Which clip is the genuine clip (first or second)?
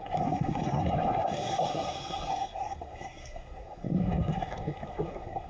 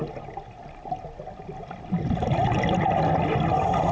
second